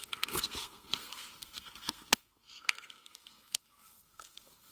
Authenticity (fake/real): fake